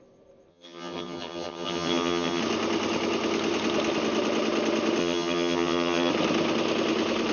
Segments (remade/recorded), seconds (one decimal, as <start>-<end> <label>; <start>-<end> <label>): 0.0-0.5 recorded; 0.5-2.4 remade; 2.4-5.0 recorded; 5.0-6.1 remade; 6.1-7.3 recorded